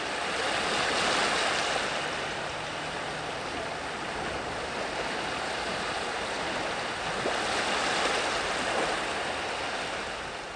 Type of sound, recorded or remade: recorded